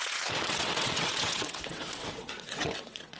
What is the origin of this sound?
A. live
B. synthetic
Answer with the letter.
B